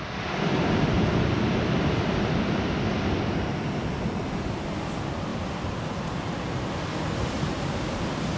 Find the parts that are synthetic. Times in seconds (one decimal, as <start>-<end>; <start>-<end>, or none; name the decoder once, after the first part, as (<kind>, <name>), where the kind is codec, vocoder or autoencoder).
none